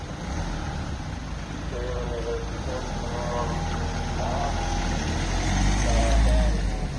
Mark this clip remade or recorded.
recorded